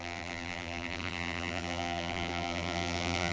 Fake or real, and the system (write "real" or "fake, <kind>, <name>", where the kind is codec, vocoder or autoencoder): fake, vocoder, BigVGAN v2